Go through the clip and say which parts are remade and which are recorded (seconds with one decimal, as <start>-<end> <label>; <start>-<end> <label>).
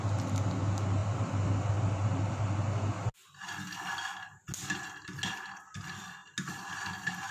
0.0-1.0 recorded; 1.0-1.7 remade; 1.7-7.3 recorded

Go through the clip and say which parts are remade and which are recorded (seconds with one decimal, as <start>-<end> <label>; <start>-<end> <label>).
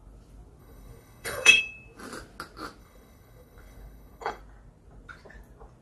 0.0-0.6 recorded; 0.6-1.6 remade; 1.6-2.8 recorded; 2.8-4.4 remade; 4.4-5.8 recorded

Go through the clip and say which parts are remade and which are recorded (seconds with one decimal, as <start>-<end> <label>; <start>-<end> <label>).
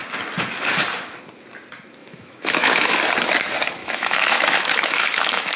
0.0-2.0 recorded; 2.0-3.0 remade; 3.0-3.8 recorded; 3.8-5.6 remade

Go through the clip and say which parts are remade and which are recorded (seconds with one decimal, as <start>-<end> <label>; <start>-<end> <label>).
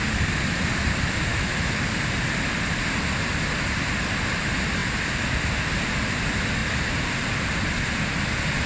0.0-1.3 recorded; 1.3-1.8 remade; 1.8-8.7 recorded